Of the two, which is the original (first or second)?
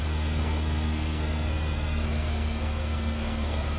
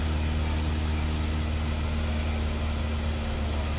second